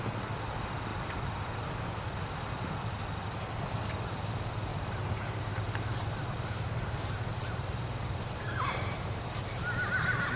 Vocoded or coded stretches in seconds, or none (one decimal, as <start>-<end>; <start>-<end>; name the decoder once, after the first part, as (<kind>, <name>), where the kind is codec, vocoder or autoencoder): 4.7-9.0 (vocoder, BigVGAN v2)